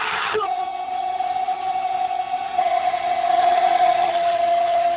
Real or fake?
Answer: fake